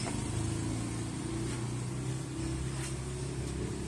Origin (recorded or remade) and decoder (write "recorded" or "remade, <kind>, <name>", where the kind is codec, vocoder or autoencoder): recorded